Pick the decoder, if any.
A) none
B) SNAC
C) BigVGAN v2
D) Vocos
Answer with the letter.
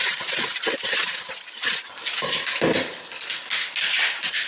C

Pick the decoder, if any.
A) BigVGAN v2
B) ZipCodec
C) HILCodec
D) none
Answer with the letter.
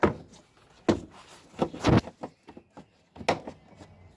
D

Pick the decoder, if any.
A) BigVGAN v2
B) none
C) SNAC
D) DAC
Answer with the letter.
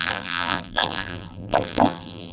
A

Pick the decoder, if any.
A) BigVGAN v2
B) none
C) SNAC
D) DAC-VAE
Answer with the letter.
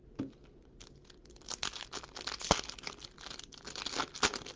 B